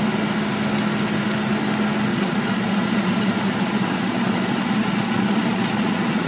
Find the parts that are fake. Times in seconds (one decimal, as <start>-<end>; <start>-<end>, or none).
2.1-6.3